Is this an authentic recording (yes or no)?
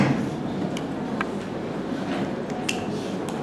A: yes